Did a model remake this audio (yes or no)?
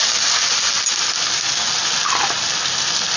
no